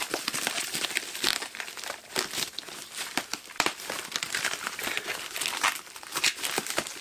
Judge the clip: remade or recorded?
remade